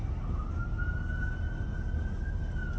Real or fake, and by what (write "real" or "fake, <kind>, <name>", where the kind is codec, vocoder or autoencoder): real